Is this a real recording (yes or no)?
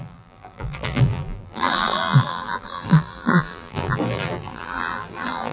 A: no